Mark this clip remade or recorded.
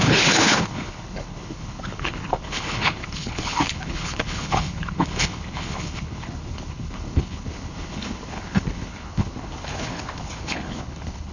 remade